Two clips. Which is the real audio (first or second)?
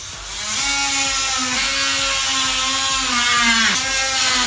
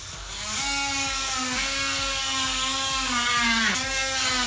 first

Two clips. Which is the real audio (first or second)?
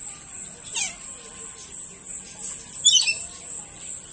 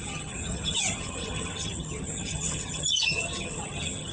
first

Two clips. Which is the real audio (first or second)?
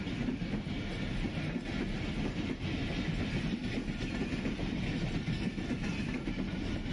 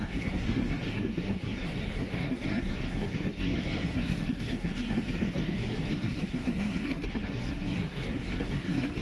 first